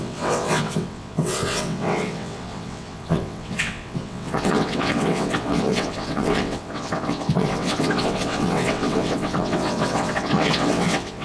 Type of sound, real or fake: fake